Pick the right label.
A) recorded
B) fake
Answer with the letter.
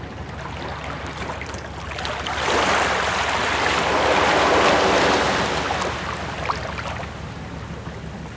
A